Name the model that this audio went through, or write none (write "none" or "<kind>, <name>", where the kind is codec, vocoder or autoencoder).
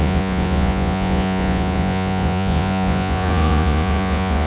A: vocoder, Vocos